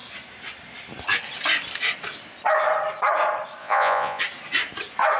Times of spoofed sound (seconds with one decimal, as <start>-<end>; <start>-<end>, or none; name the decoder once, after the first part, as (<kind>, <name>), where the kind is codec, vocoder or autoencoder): 3.6-4.2 (vocoder, Vocos)